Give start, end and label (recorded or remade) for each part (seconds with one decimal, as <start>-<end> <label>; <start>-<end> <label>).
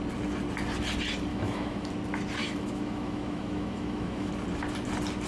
0.0-1.3 recorded; 1.3-1.9 remade; 1.9-2.4 recorded; 2.4-4.3 remade; 4.3-5.3 recorded